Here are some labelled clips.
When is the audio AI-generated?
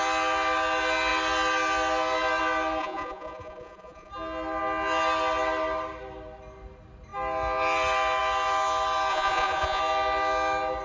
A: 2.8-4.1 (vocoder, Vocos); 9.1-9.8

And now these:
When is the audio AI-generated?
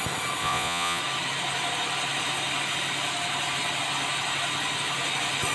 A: 0.4-1.0 (vocoder, Vocos)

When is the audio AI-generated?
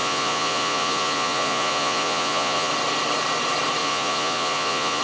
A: 0.0-2.7 (vocoder, Vocos); 3.8-5.0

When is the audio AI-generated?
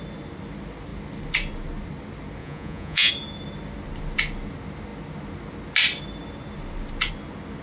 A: 2.4-3.1 (vocoder, Vocos)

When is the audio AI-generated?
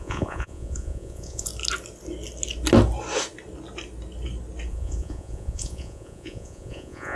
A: 0.0-1.5 (vocoder, Vocos); 4.7-7.2